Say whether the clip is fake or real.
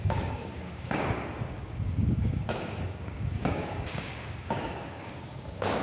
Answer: fake